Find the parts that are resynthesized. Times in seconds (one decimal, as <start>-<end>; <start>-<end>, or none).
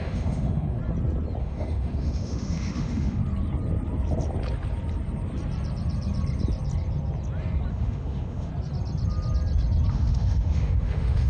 0.0-0.8; 1.4-3.2; 7.7-8.5; 9.9-11.3